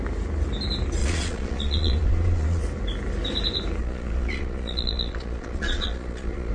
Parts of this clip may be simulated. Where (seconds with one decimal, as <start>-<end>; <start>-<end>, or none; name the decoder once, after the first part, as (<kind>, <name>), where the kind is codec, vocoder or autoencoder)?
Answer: 1.0-2.6 (vocoder, Vocos); 3.8-6.5